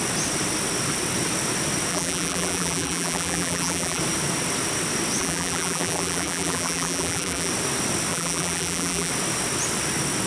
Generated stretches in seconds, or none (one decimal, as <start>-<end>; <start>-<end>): 1.9-4.0; 5.2-7.5; 8.1-9.1